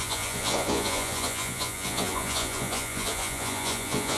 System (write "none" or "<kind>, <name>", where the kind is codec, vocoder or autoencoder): vocoder, Vocos